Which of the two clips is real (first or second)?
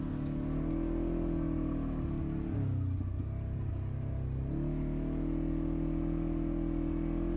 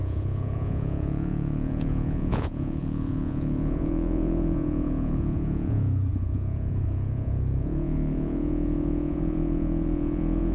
first